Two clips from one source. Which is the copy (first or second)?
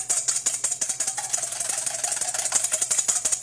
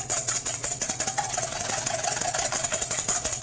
second